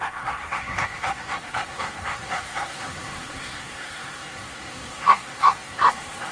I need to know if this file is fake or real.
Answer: fake